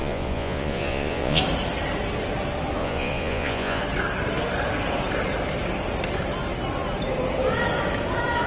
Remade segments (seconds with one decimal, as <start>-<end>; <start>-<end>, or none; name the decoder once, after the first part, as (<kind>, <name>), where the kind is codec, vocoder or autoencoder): 0.0-1.4 (vocoder, Vocos); 2.8-3.8